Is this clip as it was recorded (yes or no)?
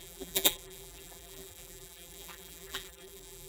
no